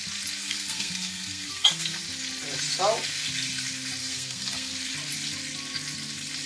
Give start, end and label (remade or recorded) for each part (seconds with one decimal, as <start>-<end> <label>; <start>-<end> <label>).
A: 0.0-0.4 recorded; 0.4-2.0 remade; 2.0-4.0 recorded; 4.0-4.7 remade; 4.7-6.5 recorded